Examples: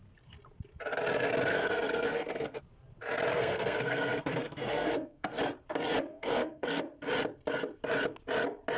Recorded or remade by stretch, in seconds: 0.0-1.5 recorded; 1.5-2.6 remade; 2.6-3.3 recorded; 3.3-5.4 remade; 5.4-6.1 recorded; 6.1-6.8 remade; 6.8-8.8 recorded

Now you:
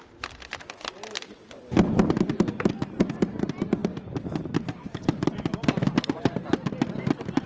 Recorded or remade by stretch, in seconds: 0.0-7.5 recorded

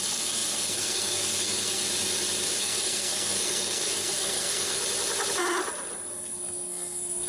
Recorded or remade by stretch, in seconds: 0.0-1.8 remade; 1.8-2.6 recorded; 2.6-4.8 remade; 4.8-6.1 recorded; 6.1-7.3 remade

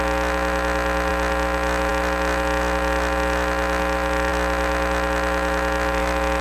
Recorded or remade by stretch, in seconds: 0.0-6.4 recorded